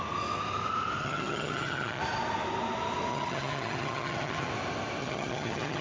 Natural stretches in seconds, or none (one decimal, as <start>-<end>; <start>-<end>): 0.0-1.0; 2.0-3.1; 4.5-5.0